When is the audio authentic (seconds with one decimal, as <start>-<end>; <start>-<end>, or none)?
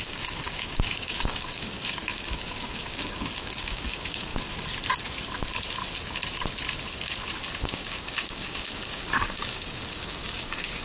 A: 4.3-7.6